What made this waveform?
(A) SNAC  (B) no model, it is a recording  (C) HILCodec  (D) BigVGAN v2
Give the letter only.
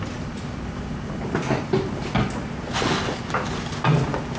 B